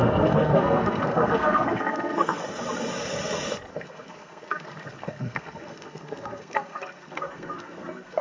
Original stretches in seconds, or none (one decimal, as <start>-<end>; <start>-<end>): 2.4-3.7